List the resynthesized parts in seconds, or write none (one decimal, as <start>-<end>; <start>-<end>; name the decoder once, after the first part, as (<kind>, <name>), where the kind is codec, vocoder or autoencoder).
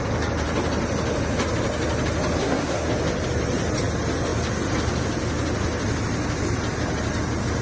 2.4-2.9 (codec, SNAC)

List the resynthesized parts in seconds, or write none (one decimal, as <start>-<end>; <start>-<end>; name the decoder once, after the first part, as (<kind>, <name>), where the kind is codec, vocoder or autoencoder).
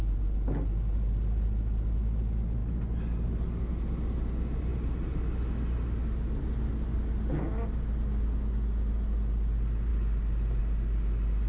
none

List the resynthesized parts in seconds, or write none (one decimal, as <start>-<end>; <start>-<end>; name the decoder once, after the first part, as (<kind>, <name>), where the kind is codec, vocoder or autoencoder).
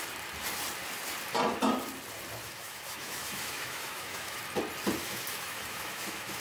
2.4-4.4 (autoencoder, DAC-VAE); 5.0-6.4